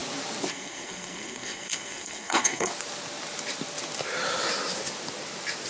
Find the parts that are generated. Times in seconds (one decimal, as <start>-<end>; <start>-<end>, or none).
0.5-2.7